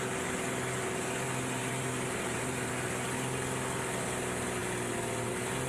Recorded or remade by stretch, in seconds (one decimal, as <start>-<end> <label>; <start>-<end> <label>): 0.0-1.6 recorded; 1.6-2.7 remade; 2.7-5.7 recorded